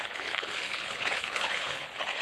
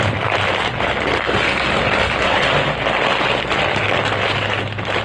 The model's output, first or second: first